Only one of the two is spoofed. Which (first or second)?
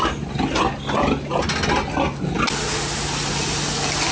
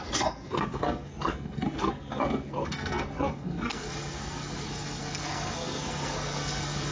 second